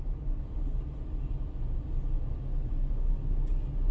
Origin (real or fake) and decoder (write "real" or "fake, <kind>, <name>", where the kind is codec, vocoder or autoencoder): real